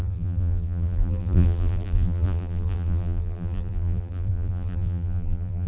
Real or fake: fake